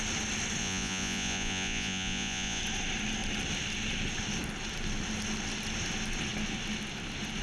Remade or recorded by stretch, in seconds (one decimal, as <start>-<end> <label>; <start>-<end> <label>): 0.0-0.6 recorded; 0.6-2.6 remade; 2.6-7.4 recorded